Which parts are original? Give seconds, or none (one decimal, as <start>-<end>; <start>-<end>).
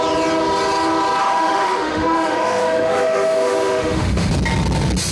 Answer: 0.0-1.2; 4.3-5.1